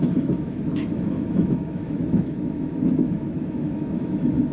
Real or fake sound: fake